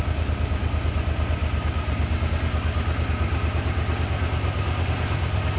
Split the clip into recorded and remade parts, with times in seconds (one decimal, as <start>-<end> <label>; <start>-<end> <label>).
0.0-5.6 recorded